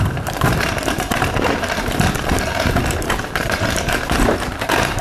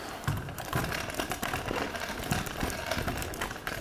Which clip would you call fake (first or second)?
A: first